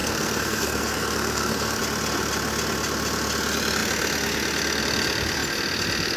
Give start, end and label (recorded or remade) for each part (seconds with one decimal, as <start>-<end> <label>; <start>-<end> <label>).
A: 0.0-1.8 remade; 1.8-6.2 recorded